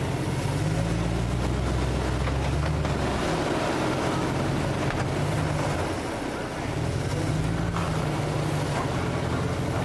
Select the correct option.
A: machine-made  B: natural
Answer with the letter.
B